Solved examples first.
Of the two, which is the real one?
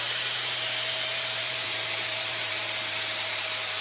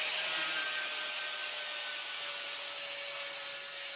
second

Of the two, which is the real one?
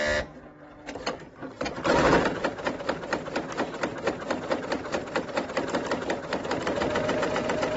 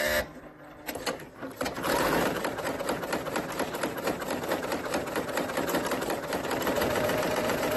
first